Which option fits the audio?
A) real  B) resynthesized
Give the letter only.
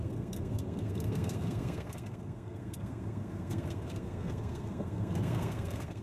B